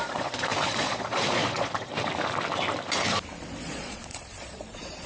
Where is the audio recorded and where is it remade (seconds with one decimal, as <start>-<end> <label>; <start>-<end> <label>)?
0.0-1.9 remade; 1.9-3.4 recorded; 3.4-5.1 remade